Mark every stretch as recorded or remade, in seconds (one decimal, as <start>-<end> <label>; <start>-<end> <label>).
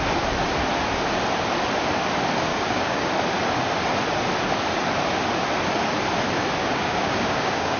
0.0-2.5 recorded; 2.5-3.1 remade; 3.1-6.6 recorded; 6.6-7.8 remade